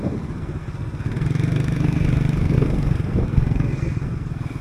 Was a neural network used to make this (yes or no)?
yes